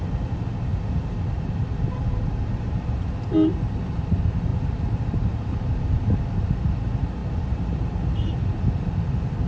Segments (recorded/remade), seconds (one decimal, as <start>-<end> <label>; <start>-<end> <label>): 0.0-0.7 recorded; 0.7-3.0 remade; 3.0-4.5 recorded; 4.5-5.5 remade; 5.5-7.2 recorded; 7.2-8.0 remade; 8.0-9.5 recorded

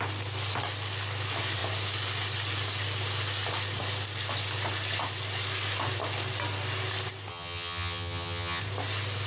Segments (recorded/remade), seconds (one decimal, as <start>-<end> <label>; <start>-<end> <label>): 0.0-7.3 recorded; 7.3-8.6 remade; 8.6-9.3 recorded

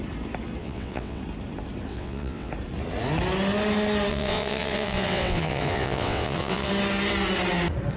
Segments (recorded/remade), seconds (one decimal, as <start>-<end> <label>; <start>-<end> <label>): 0.0-0.6 recorded; 0.6-1.2 remade; 1.2-1.9 recorded; 1.9-2.5 remade; 2.5-4.1 recorded; 4.1-6.7 remade; 6.7-8.0 recorded

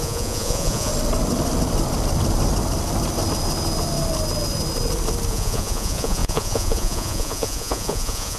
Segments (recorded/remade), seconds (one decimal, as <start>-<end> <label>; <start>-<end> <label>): 0.0-0.9 remade; 0.9-5.3 recorded; 5.3-8.4 remade

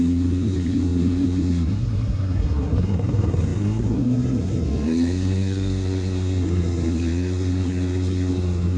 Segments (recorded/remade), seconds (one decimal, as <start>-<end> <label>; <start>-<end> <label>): 0.0-8.8 remade

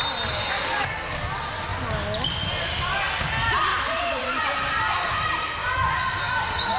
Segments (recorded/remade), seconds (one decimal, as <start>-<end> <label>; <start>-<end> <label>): 0.0-3.7 recorded; 3.7-4.4 remade; 4.4-6.8 recorded

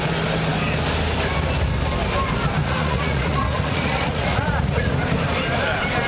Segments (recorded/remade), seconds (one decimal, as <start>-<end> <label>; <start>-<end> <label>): 0.0-2.6 recorded; 2.6-4.9 remade; 4.9-6.1 recorded

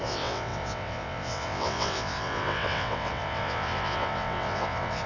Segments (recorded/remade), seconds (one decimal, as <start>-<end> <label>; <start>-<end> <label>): 0.0-5.1 remade